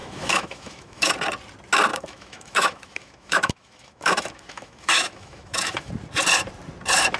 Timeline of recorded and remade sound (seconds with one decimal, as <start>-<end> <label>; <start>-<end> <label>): 0.0-1.1 remade; 1.1-1.9 recorded; 1.9-5.9 remade; 5.9-7.2 recorded